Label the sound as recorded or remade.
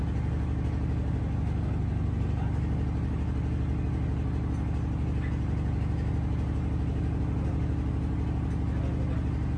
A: recorded